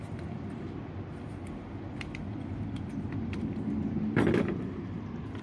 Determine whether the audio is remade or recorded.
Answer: remade